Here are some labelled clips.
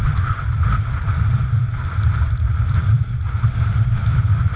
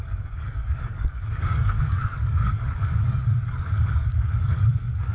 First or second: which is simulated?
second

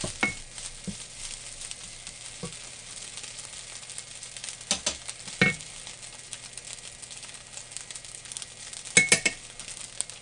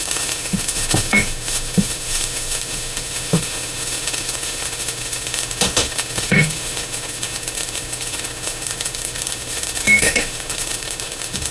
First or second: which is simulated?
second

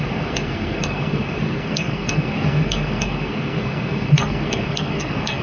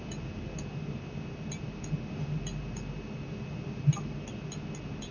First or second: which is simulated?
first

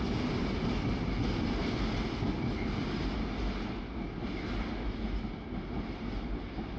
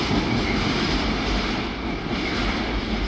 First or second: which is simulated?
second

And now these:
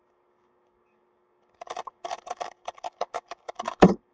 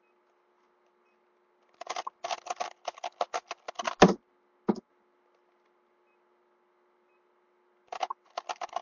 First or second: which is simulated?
first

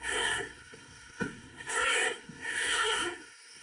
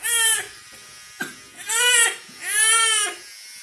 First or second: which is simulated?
first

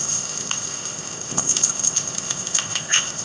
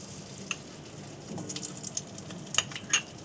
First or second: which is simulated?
first